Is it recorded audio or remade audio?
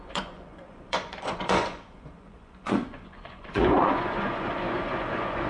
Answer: remade